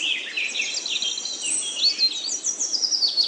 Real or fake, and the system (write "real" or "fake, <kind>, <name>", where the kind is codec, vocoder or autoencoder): real